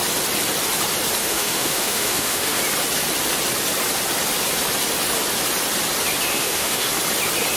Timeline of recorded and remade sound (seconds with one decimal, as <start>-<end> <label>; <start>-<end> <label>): 0.0-1.2 recorded; 1.2-2.6 remade; 2.6-6.3 recorded; 6.3-6.9 remade; 6.9-7.6 recorded